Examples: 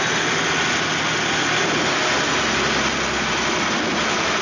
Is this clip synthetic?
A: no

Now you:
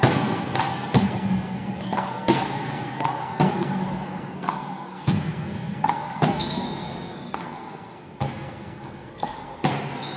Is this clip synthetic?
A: yes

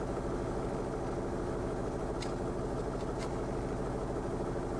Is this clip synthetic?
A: no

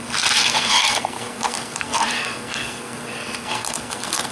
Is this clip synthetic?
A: yes